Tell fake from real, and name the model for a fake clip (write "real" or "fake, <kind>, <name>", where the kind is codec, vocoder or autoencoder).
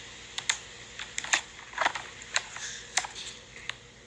real